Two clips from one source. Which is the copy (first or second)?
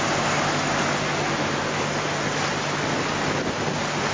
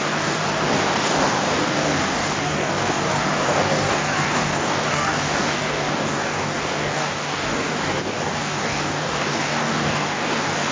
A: second